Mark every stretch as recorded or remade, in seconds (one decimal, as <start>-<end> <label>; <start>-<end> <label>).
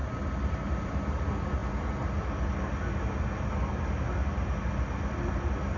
0.0-5.8 recorded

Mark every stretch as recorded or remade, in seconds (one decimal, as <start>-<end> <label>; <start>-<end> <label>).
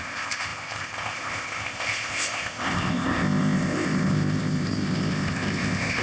0.0-6.0 remade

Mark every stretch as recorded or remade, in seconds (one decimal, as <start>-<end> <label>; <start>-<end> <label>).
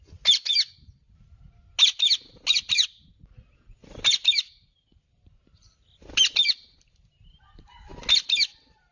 0.0-8.9 recorded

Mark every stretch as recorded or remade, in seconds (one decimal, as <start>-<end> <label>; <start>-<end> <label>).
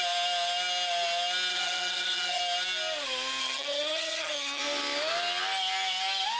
0.0-1.5 recorded; 1.5-2.4 remade; 2.4-3.4 recorded; 3.4-4.6 remade; 4.6-6.4 recorded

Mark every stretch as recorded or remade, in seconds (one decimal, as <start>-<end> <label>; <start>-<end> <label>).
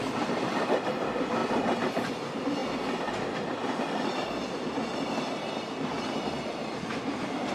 0.0-7.5 remade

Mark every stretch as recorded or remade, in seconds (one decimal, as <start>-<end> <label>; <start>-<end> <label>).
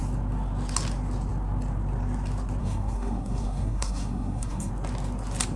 0.0-2.6 recorded; 2.6-4.7 remade; 4.7-5.6 recorded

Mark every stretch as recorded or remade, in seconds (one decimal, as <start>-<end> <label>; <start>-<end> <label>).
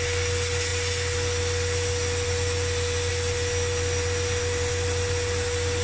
0.0-5.8 recorded